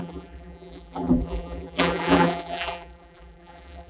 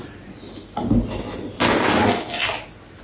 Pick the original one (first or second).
second